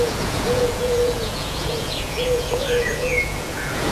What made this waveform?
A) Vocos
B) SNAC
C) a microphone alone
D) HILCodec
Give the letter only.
A